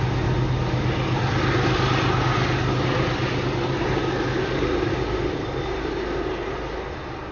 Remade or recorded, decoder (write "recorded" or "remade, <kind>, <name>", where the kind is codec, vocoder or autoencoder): recorded